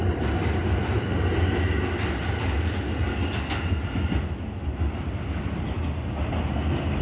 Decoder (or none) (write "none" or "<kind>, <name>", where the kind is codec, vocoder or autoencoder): none